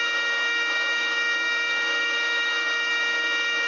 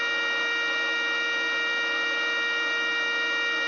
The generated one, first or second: first